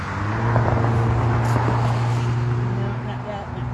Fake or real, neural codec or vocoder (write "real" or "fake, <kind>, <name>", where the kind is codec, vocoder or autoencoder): real